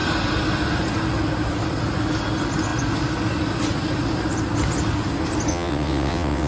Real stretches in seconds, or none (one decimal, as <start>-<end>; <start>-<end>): 0.0-5.5